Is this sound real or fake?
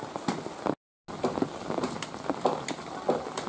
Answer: real